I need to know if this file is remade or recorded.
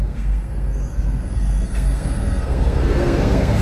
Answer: remade